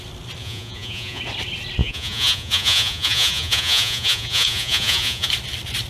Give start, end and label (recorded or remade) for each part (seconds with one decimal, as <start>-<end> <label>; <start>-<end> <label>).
0.0-0.4 recorded; 0.4-1.2 remade; 1.2-1.8 recorded; 1.8-5.3 remade; 5.3-5.9 recorded

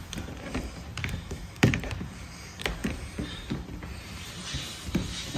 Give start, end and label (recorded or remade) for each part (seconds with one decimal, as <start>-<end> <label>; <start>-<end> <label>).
0.0-5.4 remade

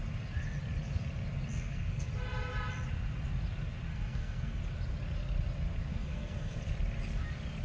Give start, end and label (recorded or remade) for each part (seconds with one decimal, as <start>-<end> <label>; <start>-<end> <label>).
0.0-1.5 recorded; 1.5-2.1 remade; 2.1-3.9 recorded; 3.9-4.6 remade; 4.6-5.9 recorded; 5.9-6.6 remade; 6.6-7.6 recorded

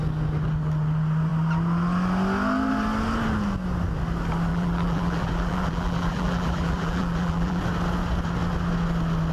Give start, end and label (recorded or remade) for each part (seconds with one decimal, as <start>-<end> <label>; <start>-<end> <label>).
0.0-4.5 recorded; 4.5-7.6 remade; 7.6-9.3 recorded

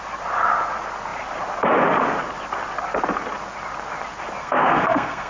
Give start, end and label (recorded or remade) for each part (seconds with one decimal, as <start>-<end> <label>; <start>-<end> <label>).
0.0-4.4 recorded; 4.4-5.3 remade

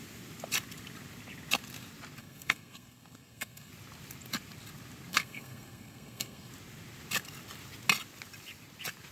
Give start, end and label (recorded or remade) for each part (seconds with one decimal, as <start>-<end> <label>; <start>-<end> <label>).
0.0-2.2 recorded; 2.2-3.7 remade; 3.7-5.1 recorded; 5.1-6.5 remade; 6.5-9.1 recorded